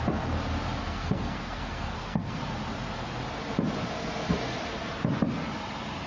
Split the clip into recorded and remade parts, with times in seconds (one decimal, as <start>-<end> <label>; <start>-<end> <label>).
0.0-0.8 recorded; 0.8-2.4 remade; 2.4-6.1 recorded